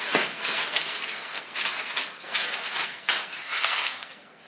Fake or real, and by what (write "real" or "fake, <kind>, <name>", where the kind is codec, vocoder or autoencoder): fake, codec, SNAC